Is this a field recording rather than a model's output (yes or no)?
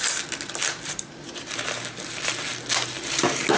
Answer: yes